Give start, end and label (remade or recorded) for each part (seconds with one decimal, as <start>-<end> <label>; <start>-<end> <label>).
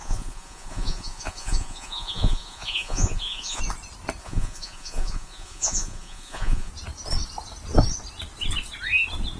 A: 0.0-3.6 remade; 3.6-4.2 recorded; 4.2-6.7 remade; 6.7-9.4 recorded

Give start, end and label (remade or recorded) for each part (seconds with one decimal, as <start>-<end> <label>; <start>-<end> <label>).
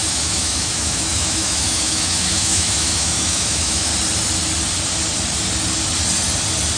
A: 0.0-3.9 remade; 3.9-6.8 recorded